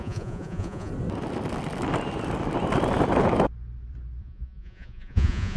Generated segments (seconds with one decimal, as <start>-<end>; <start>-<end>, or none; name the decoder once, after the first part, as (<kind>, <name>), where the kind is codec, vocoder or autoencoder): 0.0-0.9 (vocoder, Vocos); 4.2-5.6